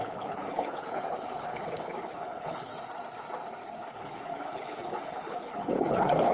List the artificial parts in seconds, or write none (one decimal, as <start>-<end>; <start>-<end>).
0.0-2.7; 3.9-6.3